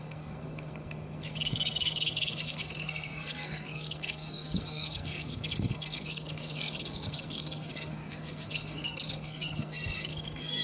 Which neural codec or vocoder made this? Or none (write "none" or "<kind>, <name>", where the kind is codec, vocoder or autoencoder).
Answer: codec, SNAC